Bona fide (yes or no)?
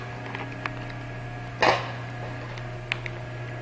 yes